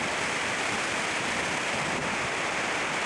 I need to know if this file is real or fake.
fake